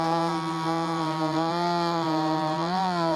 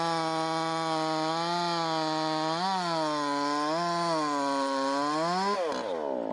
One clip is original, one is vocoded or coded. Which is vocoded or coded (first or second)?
first